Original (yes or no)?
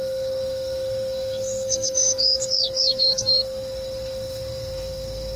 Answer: no